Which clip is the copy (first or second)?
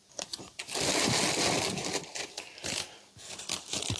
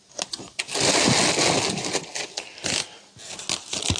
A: first